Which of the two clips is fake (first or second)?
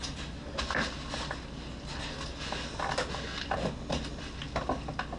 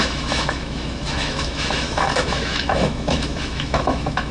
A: second